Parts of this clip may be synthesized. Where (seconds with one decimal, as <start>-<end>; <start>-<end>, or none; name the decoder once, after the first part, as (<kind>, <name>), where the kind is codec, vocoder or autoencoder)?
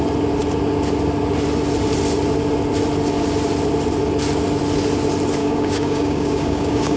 5.4-7.0 (codec, DAC)